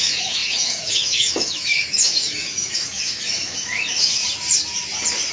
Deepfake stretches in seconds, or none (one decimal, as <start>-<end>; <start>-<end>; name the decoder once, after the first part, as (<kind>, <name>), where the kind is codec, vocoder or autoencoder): 0.0-4.2 (autoencoder, DAC-VAE)